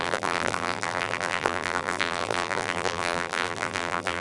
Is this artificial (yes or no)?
yes